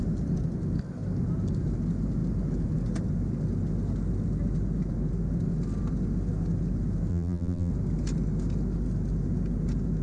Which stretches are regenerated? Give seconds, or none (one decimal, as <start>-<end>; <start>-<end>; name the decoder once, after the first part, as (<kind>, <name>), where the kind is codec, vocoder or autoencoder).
7.1-7.7 (vocoder, BigVGAN v2)